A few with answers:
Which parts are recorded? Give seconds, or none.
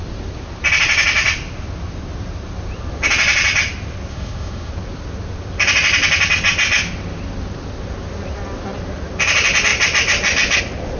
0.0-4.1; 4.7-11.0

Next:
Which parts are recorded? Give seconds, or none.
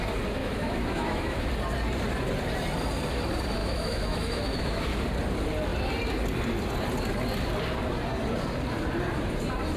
0.0-0.4; 1.5-3.6; 4.8-9.8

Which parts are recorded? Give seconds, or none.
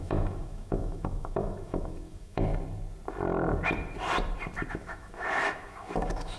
2.5-4.7